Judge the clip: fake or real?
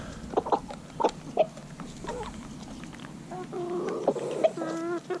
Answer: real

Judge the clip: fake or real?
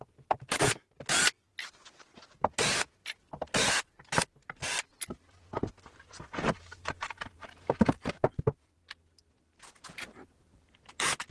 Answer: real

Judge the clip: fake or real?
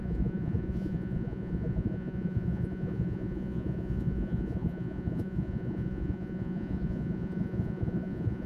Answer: fake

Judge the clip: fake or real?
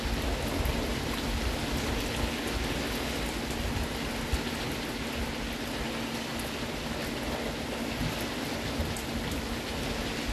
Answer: real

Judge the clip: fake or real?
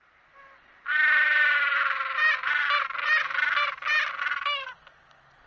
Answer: real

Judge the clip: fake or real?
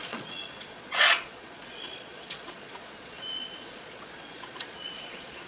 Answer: fake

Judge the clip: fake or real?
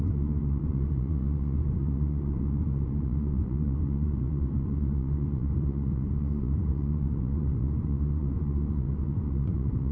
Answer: fake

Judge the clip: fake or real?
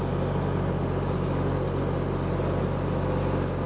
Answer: real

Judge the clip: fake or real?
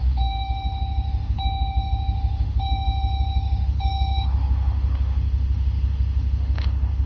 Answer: fake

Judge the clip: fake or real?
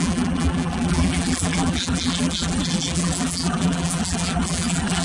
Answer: fake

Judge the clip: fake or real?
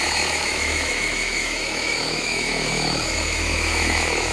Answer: fake